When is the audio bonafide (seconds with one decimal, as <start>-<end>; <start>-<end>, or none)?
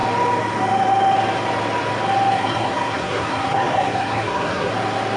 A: 0.0-2.3; 4.7-5.2